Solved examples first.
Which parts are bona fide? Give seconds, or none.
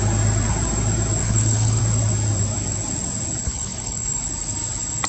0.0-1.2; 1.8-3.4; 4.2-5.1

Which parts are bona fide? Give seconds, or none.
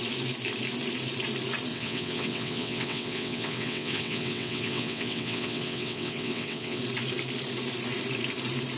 0.0-1.7; 6.8-8.8